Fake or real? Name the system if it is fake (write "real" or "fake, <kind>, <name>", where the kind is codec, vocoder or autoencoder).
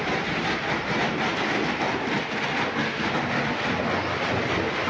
real